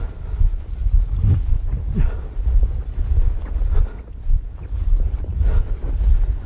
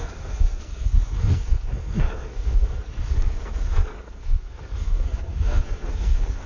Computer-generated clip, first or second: second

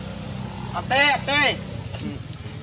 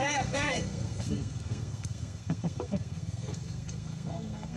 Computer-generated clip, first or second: second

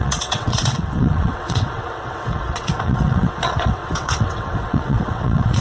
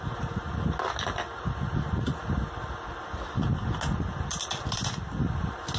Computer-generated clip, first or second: first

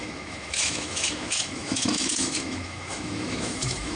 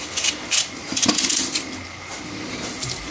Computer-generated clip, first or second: first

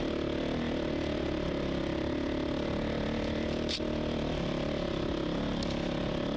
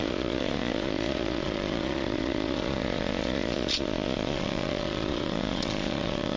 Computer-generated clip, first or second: second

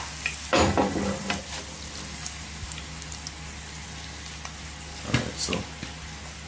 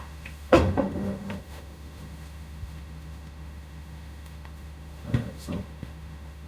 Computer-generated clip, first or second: second